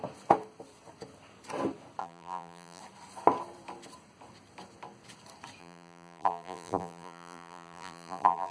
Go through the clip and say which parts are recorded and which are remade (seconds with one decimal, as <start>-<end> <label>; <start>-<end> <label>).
0.0-2.0 recorded; 2.0-2.8 remade; 2.8-5.6 recorded; 5.6-8.5 remade